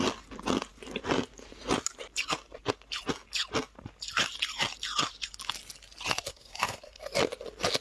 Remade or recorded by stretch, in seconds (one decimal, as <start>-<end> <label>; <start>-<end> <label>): 0.0-6.3 recorded; 6.3-7.0 remade; 7.0-7.8 recorded

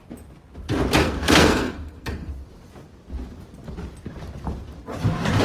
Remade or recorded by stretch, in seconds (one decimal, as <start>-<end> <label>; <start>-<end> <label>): 0.0-1.0 recorded; 1.0-2.3 remade; 2.3-5.4 recorded